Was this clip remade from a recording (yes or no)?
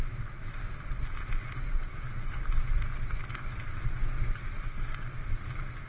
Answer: no